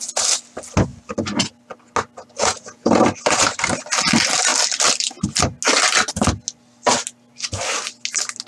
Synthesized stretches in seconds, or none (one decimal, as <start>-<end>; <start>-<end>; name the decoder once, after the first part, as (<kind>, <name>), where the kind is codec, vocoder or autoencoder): 2.4-3.0 (vocoder, Vocos)